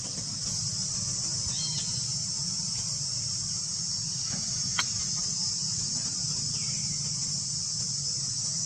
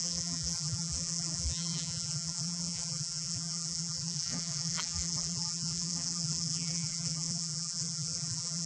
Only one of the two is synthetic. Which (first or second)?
second